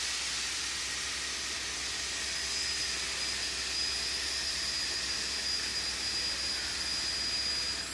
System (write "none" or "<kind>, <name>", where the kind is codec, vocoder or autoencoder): none